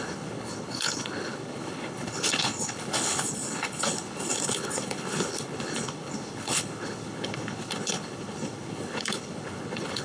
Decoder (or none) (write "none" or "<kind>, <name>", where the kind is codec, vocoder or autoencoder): codec, HILCodec